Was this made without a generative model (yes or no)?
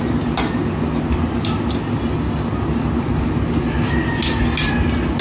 yes